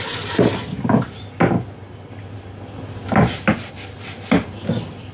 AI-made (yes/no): no